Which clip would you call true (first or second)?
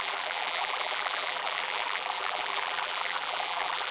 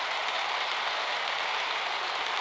second